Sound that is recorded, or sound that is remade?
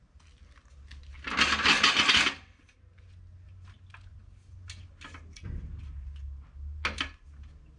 recorded